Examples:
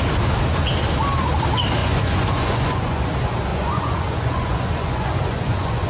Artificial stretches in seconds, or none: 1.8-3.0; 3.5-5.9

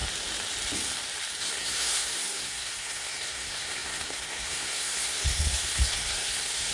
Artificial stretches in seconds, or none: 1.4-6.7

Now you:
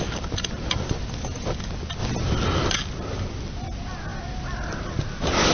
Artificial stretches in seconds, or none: none

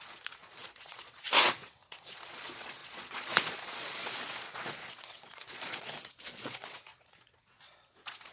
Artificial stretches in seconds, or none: 0.0-8.3

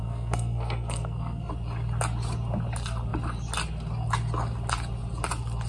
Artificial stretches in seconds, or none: 0.0-1.5

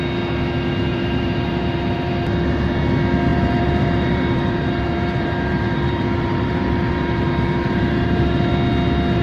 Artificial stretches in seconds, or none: 0.9-2.1; 3.3-8.5

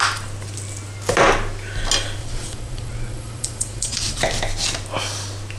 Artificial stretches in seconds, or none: 2.2-4.2